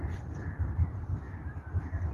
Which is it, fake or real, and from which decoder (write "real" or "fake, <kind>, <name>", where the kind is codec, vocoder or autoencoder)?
fake, vocoder, BigVGAN v2